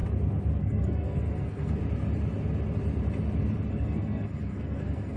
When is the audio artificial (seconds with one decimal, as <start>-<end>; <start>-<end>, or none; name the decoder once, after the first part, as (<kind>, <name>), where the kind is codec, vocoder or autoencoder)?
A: 0.6-1.8 (codec, SNAC); 3.7-5.2